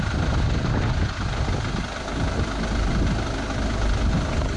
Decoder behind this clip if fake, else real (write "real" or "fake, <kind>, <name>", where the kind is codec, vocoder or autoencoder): real